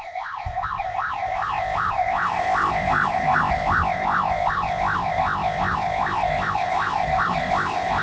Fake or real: fake